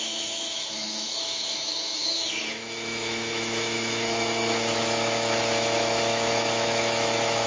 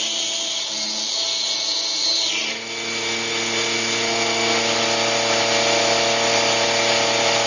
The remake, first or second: first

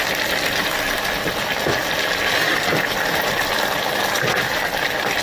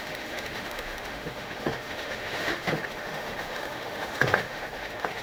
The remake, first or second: second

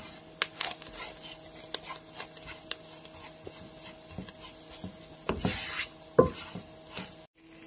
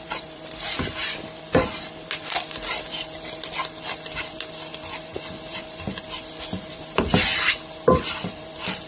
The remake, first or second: second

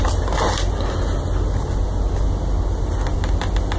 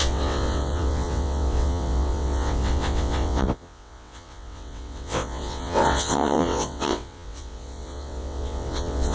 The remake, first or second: second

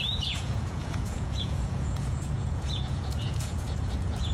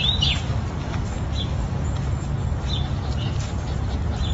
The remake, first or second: first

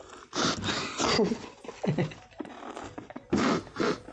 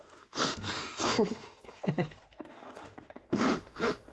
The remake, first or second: second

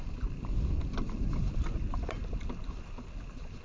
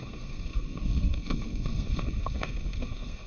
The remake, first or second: second